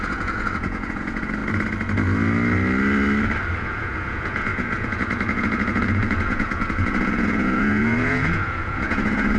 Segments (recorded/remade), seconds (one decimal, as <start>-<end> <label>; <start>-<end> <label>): 0.0-1.4 remade; 1.4-3.6 recorded; 3.6-9.4 remade